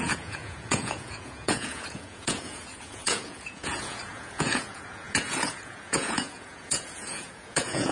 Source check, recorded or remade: remade